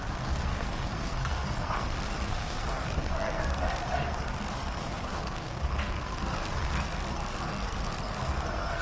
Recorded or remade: remade